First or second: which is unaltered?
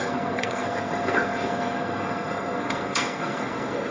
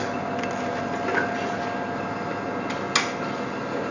second